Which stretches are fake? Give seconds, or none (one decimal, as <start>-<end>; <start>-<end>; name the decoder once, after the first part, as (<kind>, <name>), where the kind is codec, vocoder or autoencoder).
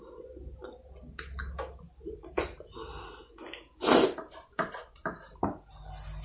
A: 4.4-5.7 (vocoder, BigVGAN v2)